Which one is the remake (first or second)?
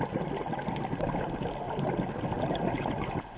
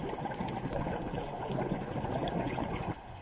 second